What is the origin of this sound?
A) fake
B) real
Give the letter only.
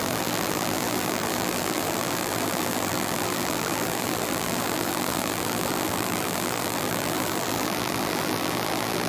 A